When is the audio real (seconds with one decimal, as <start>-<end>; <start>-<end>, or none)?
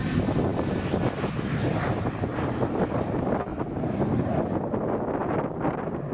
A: 0.0-3.5; 4.4-6.1